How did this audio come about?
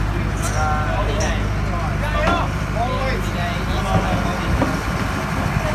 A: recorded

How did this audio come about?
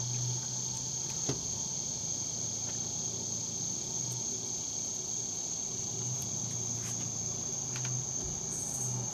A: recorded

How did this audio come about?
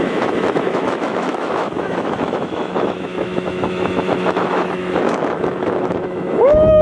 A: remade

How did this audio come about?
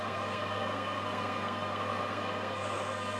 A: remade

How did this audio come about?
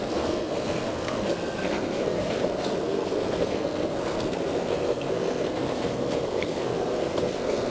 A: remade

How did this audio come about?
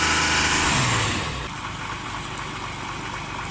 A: recorded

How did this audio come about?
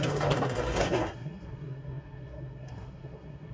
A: remade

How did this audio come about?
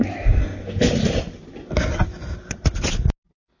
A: recorded